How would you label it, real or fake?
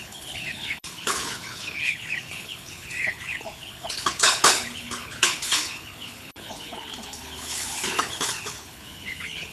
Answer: fake